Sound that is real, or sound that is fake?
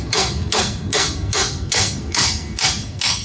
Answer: fake